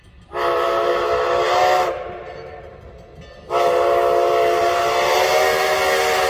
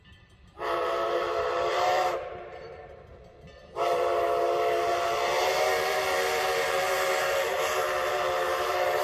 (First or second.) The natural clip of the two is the first